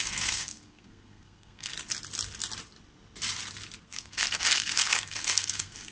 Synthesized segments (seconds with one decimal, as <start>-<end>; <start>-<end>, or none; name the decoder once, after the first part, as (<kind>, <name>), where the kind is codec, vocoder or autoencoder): 0.0-1.7 (codec, SNAC); 3.8-5.9